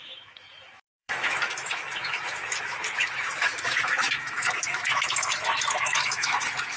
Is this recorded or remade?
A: remade